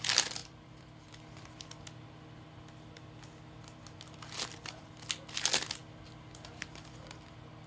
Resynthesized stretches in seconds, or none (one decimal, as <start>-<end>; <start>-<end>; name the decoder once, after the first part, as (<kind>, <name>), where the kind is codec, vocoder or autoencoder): 0.4-1.2 (vocoder, BigVGAN v2)